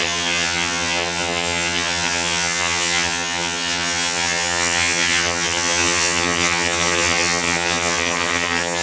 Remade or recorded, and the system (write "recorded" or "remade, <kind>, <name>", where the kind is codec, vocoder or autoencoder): remade, vocoder, HiFi-GAN